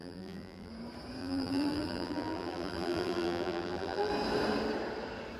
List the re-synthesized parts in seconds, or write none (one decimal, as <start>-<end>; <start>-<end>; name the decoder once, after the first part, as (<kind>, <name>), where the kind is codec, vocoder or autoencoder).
0.0-0.7 (vocoder, BigVGAN v2); 1.2-4.1